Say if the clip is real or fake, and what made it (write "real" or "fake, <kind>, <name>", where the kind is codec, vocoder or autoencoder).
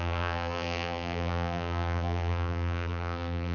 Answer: fake, vocoder, BigVGAN v2